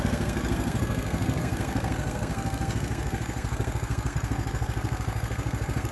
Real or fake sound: fake